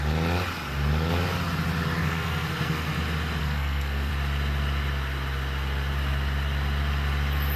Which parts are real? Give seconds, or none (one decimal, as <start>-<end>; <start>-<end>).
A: 0.0-2.0; 2.9-3.4; 4.1-7.6